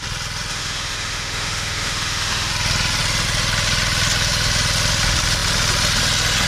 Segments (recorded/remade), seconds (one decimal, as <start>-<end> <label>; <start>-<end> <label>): 0.0-0.5 recorded; 0.5-2.5 remade; 2.5-6.5 recorded

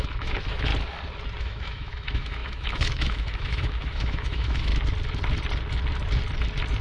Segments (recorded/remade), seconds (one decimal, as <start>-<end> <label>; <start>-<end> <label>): 0.0-0.7 remade; 0.7-1.4 recorded; 1.4-4.7 remade; 4.7-6.8 recorded

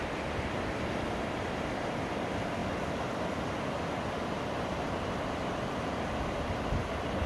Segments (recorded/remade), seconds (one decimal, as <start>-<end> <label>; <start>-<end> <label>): 0.0-7.3 recorded

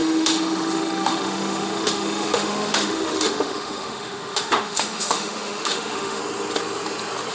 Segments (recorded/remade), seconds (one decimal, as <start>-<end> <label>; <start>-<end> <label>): 0.0-6.2 remade; 6.2-7.3 recorded

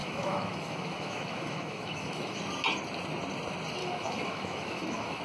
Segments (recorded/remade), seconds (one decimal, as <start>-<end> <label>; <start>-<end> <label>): 0.0-2.4 remade; 2.4-3.8 recorded; 3.8-5.2 remade

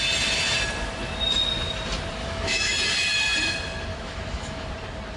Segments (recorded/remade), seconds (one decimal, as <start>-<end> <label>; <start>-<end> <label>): 0.0-2.2 recorded; 2.2-2.7 remade; 2.7-3.9 recorded; 3.9-4.7 remade; 4.7-5.2 recorded

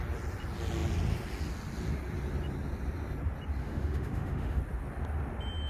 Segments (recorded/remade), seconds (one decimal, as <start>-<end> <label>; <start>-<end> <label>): 0.0-3.6 recorded; 3.6-4.6 remade; 4.6-5.7 recorded

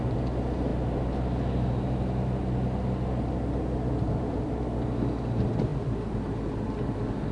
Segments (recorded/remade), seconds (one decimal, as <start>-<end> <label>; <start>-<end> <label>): 0.0-7.3 recorded